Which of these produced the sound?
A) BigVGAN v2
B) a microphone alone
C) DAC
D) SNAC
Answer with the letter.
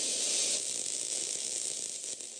B